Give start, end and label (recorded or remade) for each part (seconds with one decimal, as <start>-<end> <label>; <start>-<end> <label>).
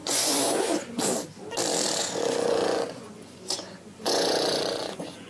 0.0-1.0 remade; 1.0-2.0 recorded; 2.0-5.3 remade